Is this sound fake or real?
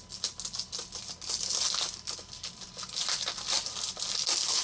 real